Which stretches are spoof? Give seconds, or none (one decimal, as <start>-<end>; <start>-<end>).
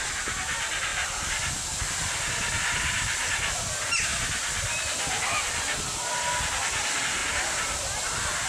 0.9-1.5; 7.2-8.0